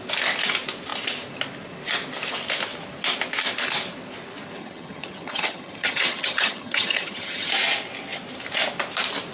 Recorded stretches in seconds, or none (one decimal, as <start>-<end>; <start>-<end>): 0.0-4.6; 7.5-9.3